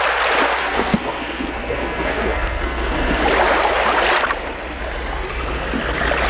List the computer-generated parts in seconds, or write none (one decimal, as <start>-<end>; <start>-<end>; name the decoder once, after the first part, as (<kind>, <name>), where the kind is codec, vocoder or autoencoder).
0.6-3.2 (codec, SNAC)